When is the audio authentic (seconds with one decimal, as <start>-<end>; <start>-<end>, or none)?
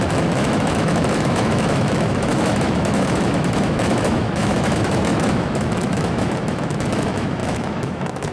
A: none